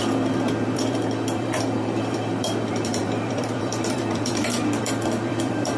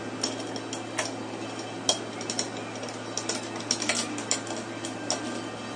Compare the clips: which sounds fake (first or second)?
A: first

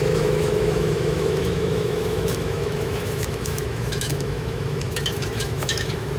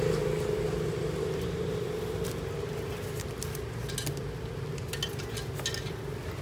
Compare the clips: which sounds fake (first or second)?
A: first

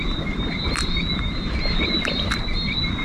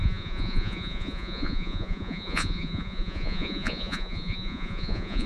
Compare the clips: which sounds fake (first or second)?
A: second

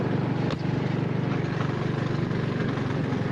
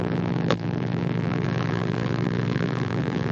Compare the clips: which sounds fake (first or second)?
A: second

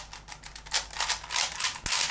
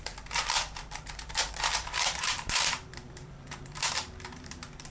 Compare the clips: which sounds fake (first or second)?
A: second